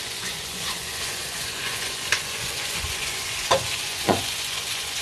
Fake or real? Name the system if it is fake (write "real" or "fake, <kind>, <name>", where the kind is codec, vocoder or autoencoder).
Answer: fake, vocoder, Vocos